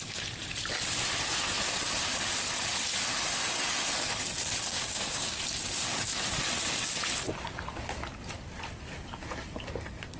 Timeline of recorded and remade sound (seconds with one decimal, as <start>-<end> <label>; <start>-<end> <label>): 0.0-4.7 recorded; 4.7-5.4 remade; 5.4-10.2 recorded